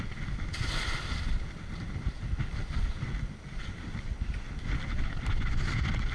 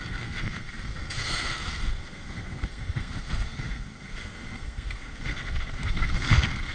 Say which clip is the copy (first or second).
second